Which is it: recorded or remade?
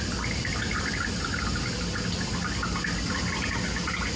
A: recorded